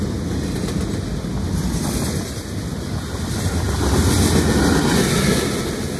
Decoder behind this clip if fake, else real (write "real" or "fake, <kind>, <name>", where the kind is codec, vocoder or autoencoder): real